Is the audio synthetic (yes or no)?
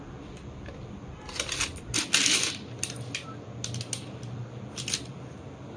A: no